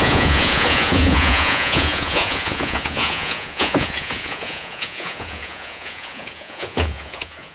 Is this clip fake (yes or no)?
yes